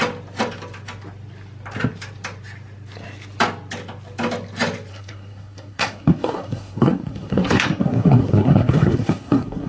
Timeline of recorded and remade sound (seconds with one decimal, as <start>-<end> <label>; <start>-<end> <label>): 0.0-4.9 recorded; 4.9-9.7 remade